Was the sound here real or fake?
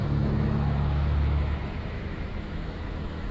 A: fake